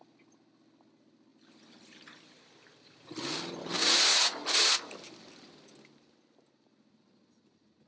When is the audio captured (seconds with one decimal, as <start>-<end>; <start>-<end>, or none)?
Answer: 0.0-1.3; 3.6-7.9